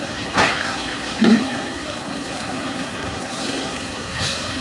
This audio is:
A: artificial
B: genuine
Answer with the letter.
A